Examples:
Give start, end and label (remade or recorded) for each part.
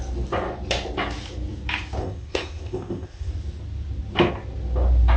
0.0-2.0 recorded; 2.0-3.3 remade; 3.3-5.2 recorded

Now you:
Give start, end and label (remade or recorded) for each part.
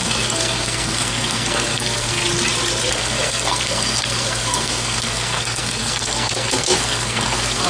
0.0-2.2 remade; 2.2-2.9 recorded; 2.9-7.7 remade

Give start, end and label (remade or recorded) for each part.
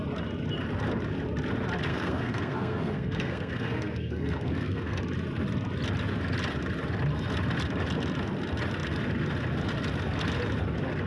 0.0-1.9 recorded; 1.9-5.0 remade; 5.0-11.1 recorded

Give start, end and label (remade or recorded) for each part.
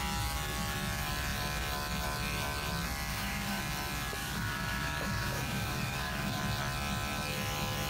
0.0-3.1 recorded; 3.1-3.6 remade; 3.6-4.2 recorded; 4.2-6.4 remade; 6.4-7.9 recorded